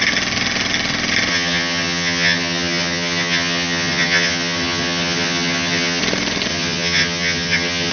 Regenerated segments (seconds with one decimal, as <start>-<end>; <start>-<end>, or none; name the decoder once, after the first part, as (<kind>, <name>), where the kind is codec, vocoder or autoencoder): 1.3-6.0 (vocoder, HiFi-GAN); 6.5-7.9

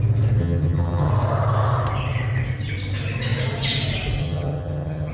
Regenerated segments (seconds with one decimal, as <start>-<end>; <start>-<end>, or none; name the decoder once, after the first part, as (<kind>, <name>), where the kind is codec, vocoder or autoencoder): 0.4-1.1 (vocoder, HiFi-GAN); 4.2-5.1

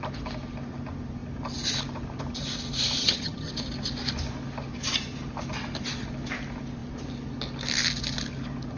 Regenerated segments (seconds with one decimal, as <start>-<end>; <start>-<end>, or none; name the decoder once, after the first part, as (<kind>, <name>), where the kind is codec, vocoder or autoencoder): 3.0-3.5 (vocoder, HiFi-GAN)

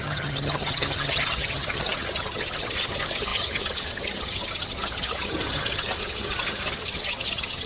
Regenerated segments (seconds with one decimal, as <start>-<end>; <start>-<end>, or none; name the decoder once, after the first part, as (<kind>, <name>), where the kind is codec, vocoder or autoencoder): 0.0-7.7 (vocoder, HiFi-GAN)

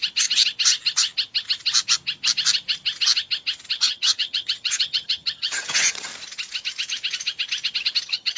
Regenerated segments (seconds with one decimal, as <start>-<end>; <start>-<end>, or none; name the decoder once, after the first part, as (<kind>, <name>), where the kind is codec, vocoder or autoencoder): 3.8-6.1 (vocoder, HiFi-GAN); 8.0-8.4

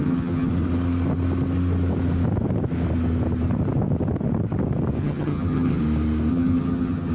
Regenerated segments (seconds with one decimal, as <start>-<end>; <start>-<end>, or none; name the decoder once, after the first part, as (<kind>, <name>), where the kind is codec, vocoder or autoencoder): 0.0-0.5 (vocoder, HiFi-GAN); 5.0-5.8; 6.3-7.1